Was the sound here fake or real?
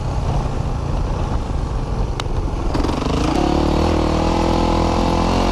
real